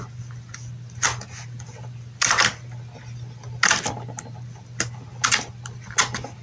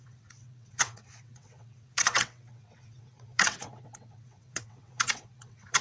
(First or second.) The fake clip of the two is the second